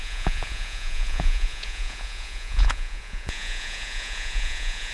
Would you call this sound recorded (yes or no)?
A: no